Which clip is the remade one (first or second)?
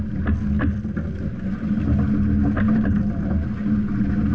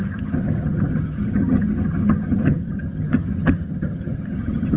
second